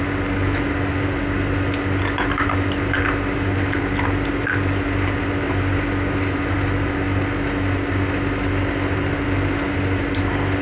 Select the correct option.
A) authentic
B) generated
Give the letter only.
A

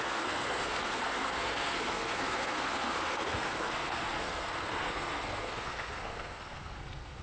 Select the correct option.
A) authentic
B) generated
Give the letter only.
B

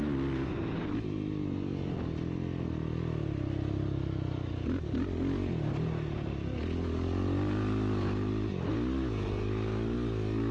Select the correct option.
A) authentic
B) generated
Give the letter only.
A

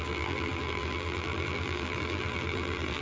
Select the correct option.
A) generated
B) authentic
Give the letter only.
A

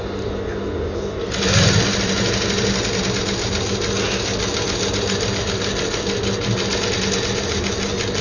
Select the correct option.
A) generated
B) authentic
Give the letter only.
B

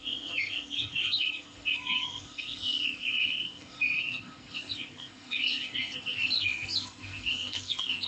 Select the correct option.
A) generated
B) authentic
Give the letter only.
A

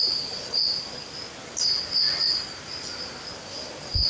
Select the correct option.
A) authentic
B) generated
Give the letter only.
A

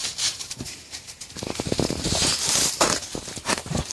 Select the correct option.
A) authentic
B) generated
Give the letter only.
B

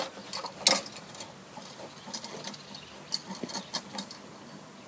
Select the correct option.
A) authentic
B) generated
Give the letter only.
A